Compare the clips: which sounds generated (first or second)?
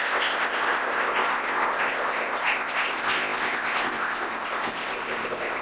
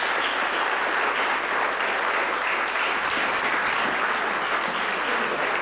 first